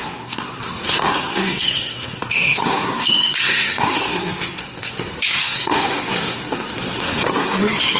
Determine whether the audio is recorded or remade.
remade